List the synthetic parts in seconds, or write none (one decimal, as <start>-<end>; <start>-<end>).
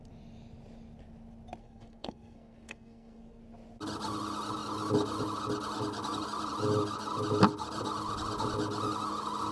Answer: 1.6-3.4